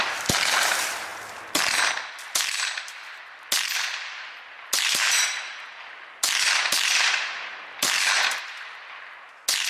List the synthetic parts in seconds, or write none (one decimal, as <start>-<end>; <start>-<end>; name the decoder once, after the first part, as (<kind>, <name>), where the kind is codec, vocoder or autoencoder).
none